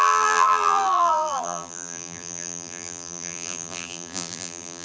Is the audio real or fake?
fake